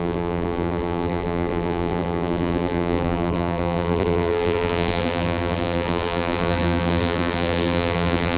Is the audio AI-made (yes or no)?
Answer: yes